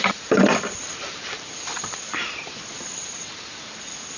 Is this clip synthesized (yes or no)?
yes